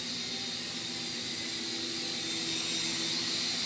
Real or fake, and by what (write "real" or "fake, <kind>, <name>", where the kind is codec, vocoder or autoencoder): real